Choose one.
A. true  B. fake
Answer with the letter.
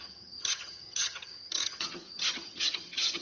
B